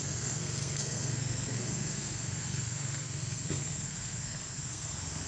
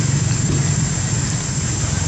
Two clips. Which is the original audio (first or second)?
second